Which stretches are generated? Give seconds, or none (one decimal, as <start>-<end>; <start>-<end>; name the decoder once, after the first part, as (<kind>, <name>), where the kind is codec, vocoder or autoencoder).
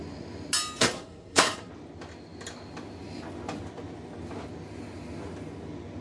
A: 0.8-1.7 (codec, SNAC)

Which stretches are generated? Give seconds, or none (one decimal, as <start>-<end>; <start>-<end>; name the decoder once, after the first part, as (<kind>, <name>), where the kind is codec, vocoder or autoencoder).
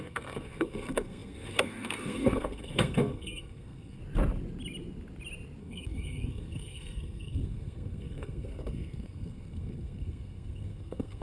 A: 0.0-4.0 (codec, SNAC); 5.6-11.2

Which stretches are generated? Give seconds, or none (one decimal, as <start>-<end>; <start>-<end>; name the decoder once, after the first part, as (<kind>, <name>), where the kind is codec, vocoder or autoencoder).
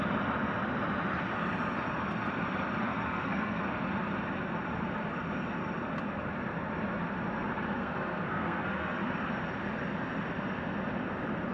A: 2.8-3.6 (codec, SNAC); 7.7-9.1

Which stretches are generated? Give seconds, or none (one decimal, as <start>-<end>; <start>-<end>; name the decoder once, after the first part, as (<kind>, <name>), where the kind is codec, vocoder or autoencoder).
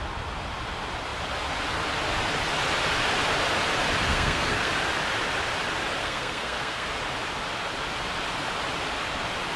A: 4.1-4.7 (codec, SNAC); 6.0-7.0